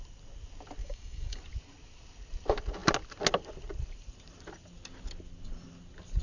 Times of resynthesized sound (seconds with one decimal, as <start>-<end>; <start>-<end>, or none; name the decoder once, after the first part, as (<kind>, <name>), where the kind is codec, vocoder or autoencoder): 0.8-1.4 (codec, DAC)